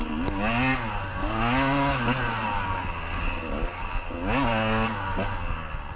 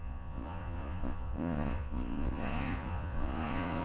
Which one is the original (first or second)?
first